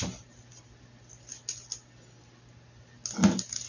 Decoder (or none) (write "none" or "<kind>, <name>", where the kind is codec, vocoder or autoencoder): none